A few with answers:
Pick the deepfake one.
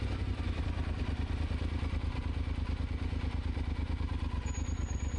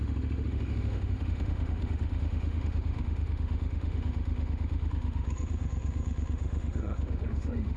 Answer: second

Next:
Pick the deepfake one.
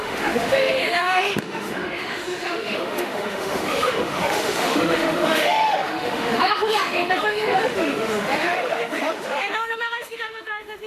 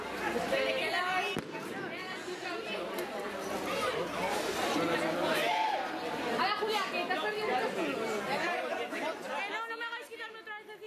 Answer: first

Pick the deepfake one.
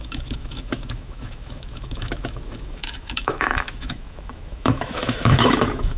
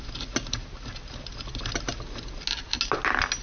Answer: first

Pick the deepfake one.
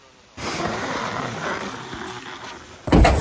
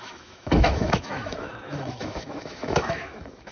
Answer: second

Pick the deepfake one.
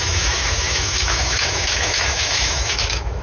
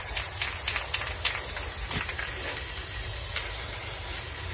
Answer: first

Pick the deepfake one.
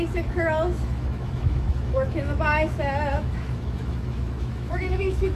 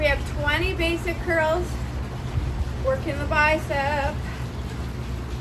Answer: first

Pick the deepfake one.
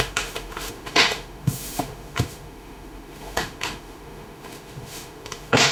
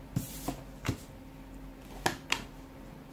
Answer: first